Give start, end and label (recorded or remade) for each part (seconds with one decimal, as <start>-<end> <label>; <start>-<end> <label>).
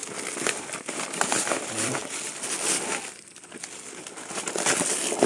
0.0-2.0 remade; 2.0-4.6 recorded; 4.6-5.3 remade